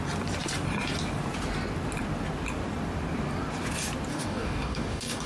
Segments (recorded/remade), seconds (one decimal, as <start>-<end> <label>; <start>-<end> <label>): 0.0-4.1 recorded; 4.1-5.3 remade